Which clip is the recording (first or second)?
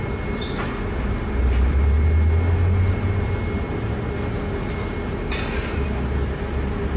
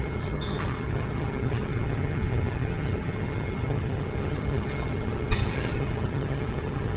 first